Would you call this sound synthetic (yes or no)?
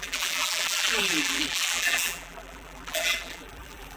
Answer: yes